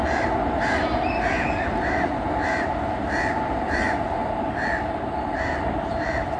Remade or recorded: remade